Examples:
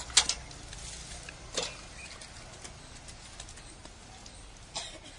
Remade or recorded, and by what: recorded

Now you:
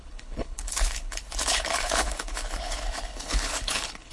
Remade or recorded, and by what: remade, codec, HILCodec